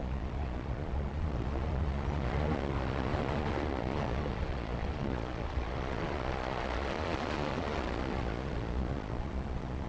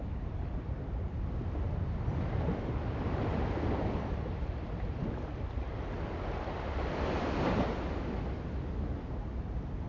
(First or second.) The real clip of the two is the second